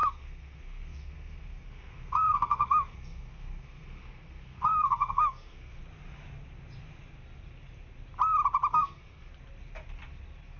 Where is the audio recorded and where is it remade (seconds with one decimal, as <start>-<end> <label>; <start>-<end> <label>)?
0.0-5.8 remade; 5.8-8.7 recorded; 8.7-9.3 remade; 9.3-10.6 recorded